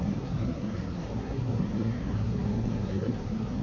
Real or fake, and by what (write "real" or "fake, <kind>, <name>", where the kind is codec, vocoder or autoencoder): fake, codec, SNAC